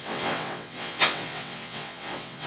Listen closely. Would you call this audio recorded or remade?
remade